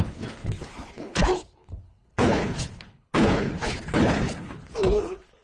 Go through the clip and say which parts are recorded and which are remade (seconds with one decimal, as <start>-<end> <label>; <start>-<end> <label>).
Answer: 0.0-5.4 remade